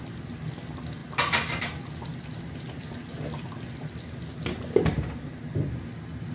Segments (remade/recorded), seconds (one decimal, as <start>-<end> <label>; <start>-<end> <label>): 0.0-6.3 recorded